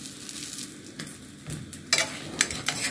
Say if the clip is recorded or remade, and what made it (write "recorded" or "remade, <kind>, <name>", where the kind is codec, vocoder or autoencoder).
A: recorded